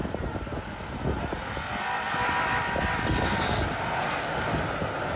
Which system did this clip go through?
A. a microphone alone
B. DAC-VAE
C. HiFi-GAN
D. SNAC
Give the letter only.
A